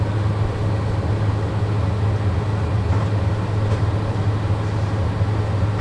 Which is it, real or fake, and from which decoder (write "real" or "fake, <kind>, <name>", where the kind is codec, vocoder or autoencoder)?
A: real